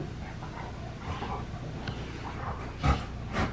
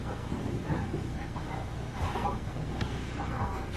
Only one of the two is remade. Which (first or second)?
second